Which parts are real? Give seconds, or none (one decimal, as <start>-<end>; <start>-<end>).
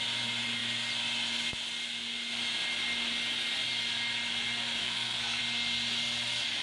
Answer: 0.0-4.8; 5.4-6.6